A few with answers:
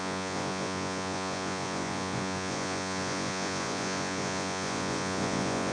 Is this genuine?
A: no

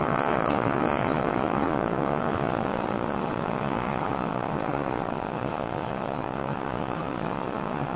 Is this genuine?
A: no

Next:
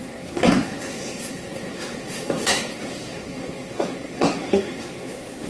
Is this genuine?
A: no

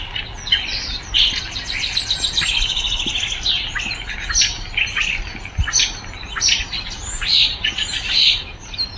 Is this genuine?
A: yes